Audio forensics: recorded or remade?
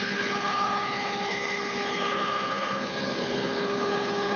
remade